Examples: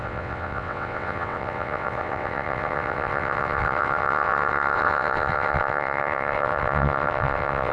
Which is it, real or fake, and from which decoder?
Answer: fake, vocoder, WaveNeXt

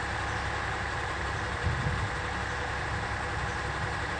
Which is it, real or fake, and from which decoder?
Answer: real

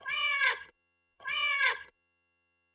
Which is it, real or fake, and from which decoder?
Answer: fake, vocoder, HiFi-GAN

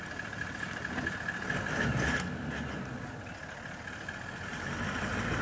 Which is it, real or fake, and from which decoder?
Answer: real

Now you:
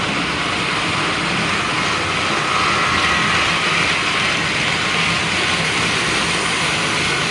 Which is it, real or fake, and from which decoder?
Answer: real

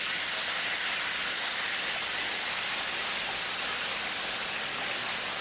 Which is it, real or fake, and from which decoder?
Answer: real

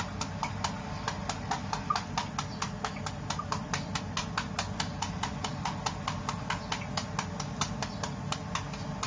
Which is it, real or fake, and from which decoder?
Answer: real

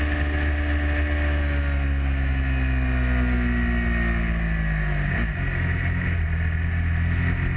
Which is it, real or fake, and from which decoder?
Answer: real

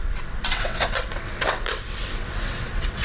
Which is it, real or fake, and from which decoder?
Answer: fake, vocoder, WaveNeXt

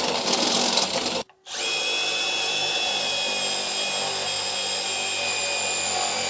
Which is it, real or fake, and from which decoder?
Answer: real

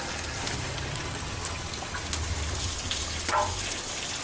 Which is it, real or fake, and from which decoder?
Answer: real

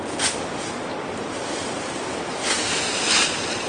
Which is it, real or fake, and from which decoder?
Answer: real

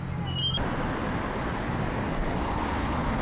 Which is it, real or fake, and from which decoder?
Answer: real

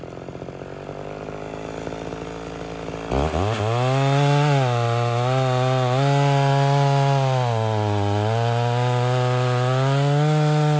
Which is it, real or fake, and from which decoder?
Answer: real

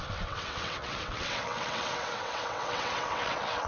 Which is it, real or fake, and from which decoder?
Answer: fake, vocoder, WaveNeXt